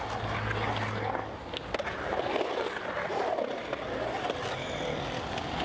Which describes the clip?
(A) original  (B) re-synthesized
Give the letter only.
A